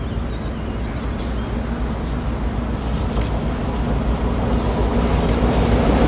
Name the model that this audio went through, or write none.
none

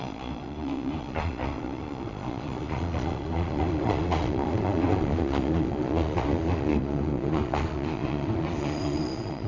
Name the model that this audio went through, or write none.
vocoder, Vocos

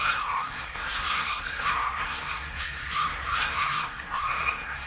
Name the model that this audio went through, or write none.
codec, SNAC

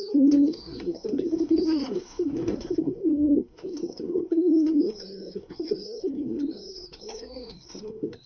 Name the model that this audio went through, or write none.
codec, SNAC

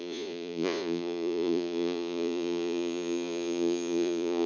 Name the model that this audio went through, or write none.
vocoder, Vocos